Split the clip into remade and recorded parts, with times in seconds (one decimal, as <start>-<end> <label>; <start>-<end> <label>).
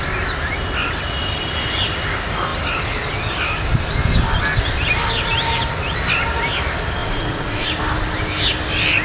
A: 0.0-7.0 recorded; 7.0-7.7 remade; 7.7-9.0 recorded